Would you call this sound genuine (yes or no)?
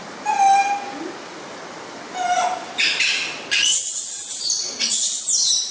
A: yes